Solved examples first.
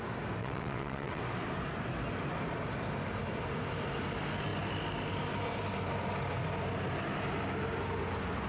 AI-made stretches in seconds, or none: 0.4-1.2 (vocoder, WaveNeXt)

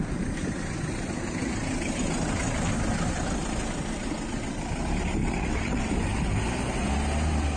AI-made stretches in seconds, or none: 5.2-5.9 (vocoder, WaveNeXt)

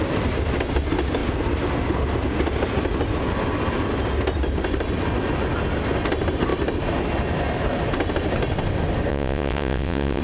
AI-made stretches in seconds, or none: 9.1-10.2 (vocoder, WaveNeXt)

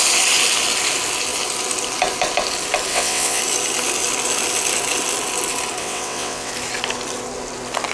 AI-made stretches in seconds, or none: 2.9-3.4 (vocoder, WaveNeXt); 5.8-6.5